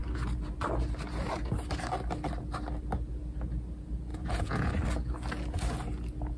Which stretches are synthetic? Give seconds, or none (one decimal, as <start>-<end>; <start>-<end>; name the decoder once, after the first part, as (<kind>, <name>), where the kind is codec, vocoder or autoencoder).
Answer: 4.1-4.7 (vocoder, Vocos)